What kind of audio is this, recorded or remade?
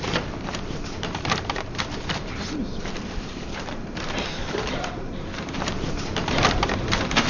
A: remade